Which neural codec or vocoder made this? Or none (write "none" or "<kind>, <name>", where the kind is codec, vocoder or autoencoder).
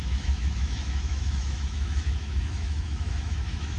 autoencoder, DAC-VAE